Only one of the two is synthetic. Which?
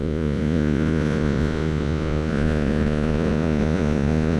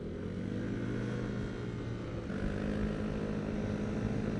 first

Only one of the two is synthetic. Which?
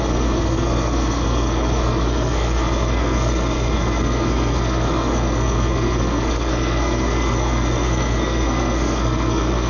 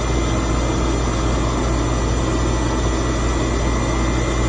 first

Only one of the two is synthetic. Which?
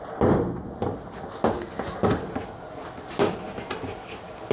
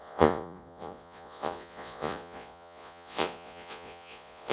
second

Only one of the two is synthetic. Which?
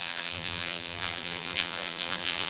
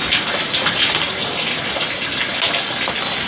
first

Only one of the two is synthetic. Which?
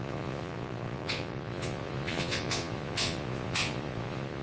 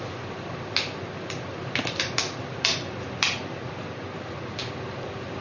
first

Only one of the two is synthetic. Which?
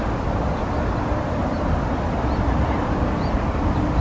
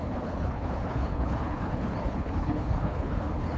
second